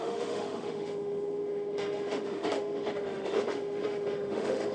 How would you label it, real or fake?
fake